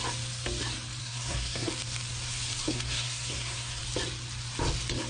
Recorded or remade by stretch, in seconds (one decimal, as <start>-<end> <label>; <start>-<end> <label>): 0.0-1.0 recorded; 1.0-1.7 remade; 1.7-2.6 recorded; 2.6-3.8 remade; 3.8-5.1 recorded

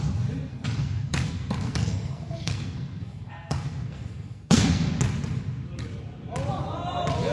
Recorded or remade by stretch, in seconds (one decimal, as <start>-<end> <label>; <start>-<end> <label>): 0.0-0.5 recorded; 0.5-4.9 remade; 4.9-7.3 recorded

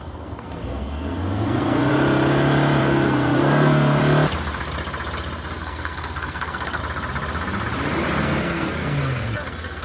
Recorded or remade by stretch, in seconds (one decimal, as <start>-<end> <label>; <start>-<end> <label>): 0.0-1.9 remade; 1.9-2.8 recorded; 2.8-4.0 remade; 4.0-5.6 recorded; 5.6-6.8 remade; 6.8-8.2 recorded; 8.2-9.8 remade

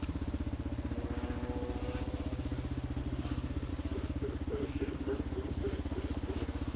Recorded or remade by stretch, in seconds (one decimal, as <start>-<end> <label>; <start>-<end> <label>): 0.0-3.0 recorded; 3.0-3.7 remade; 3.7-4.6 recorded; 4.6-5.6 remade; 5.6-6.8 recorded

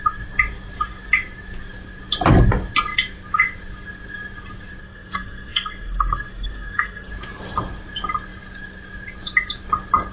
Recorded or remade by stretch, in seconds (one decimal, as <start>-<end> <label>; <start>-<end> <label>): 0.0-4.8 recorded; 4.8-7.1 remade; 7.1-10.1 recorded

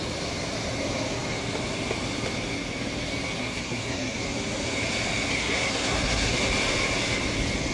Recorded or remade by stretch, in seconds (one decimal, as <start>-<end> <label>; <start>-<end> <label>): 0.0-3.4 recorded; 3.4-4.2 remade; 4.2-5.3 recorded; 5.3-6.4 remade; 6.4-7.7 recorded

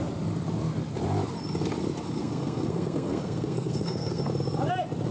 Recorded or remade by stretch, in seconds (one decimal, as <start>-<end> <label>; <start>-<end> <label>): 0.0-2.2 recorded; 2.2-4.2 remade; 4.2-5.1 recorded